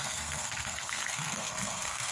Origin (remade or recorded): remade